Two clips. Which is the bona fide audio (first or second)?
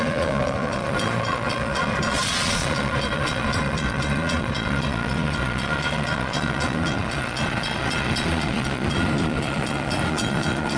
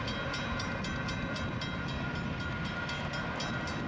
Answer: second